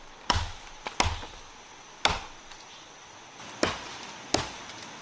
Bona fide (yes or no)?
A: yes